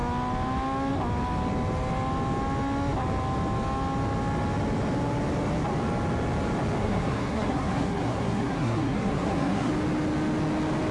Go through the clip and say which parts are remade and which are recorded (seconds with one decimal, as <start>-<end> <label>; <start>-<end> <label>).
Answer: 0.0-6.8 recorded; 6.8-9.7 remade; 9.7-10.9 recorded